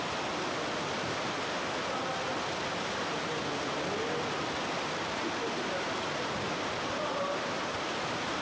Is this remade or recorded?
recorded